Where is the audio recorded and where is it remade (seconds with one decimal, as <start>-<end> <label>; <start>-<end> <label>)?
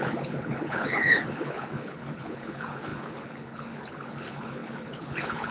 0.0-5.5 remade